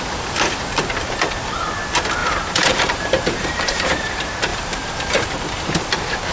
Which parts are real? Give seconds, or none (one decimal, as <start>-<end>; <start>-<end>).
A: 0.0-2.2; 4.1-4.5; 5.6-6.3